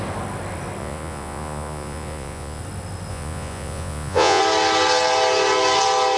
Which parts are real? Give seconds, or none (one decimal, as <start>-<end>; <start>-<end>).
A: 0.0-0.8; 2.6-3.1; 4.4-6.2